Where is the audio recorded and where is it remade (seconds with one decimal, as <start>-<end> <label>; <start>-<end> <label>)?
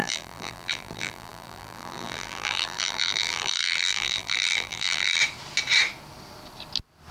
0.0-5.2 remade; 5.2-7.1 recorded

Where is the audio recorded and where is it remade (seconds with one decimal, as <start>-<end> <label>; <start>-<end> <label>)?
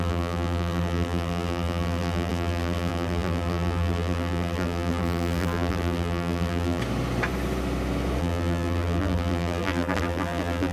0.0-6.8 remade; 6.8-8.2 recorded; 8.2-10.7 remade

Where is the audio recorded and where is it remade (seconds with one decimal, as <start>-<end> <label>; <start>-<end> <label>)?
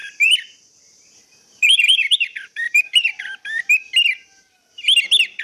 0.0-3.1 remade; 3.1-5.4 recorded